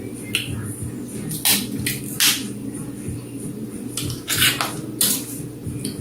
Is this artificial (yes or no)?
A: no